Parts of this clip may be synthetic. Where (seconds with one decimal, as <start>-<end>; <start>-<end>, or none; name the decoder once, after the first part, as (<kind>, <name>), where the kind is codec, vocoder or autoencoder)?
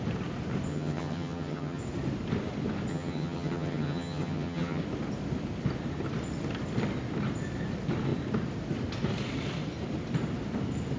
0.7-1.8 (vocoder, HiFi-GAN); 2.9-4.8